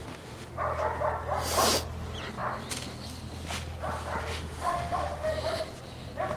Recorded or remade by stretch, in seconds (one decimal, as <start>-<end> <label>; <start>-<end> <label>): 0.0-0.5 remade; 0.5-4.3 recorded; 4.3-5.3 remade; 5.3-6.4 recorded